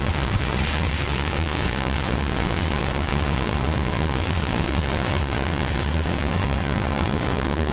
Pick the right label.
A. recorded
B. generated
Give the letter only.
B